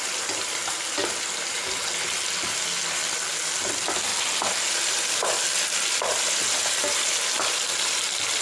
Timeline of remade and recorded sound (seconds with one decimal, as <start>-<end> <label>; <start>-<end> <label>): 0.0-1.6 remade; 1.6-3.6 recorded; 3.6-4.1 remade; 4.1-5.1 recorded; 5.1-8.4 remade